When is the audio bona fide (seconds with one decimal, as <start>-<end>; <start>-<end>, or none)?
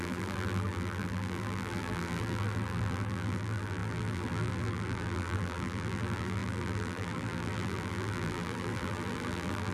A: none